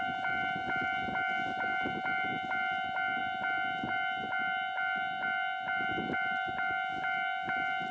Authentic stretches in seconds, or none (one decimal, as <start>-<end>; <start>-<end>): 0.0-7.9